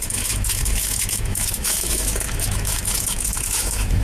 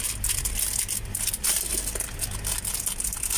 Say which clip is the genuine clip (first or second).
second